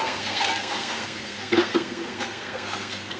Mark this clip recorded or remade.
remade